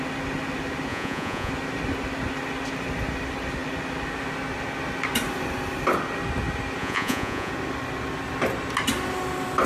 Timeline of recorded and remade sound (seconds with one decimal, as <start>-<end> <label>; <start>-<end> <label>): 0.0-0.9 recorded; 0.9-1.5 remade; 1.5-6.8 recorded; 6.8-7.5 remade; 7.5-9.7 recorded